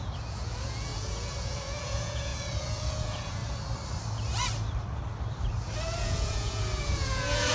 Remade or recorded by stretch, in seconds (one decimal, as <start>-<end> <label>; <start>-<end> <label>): 0.0-3.4 remade; 3.4-6.0 recorded; 6.0-7.5 remade